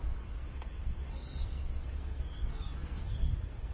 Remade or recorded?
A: remade